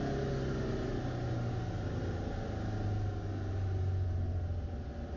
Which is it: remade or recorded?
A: recorded